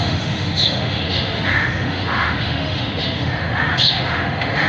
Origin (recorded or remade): remade